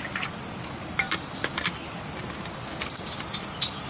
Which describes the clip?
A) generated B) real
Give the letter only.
B